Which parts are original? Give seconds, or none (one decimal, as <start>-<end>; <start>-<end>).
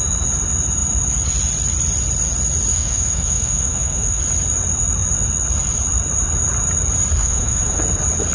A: 0.0-2.7; 4.2-7.2; 7.8-8.3